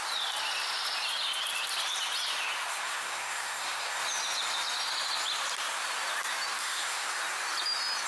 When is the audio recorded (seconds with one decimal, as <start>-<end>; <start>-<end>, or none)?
0.0-2.7; 4.0-6.6; 7.2-8.1